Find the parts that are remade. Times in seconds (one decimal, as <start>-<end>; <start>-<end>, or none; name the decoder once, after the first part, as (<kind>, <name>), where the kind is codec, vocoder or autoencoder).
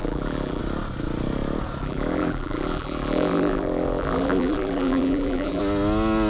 0.0-0.6 (vocoder, BigVGAN v2); 1.8-5.6